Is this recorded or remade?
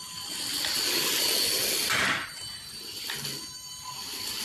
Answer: remade